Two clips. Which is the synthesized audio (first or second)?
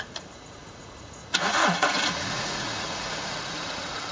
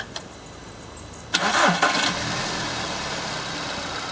first